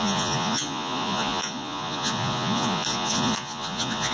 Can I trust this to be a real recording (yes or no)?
no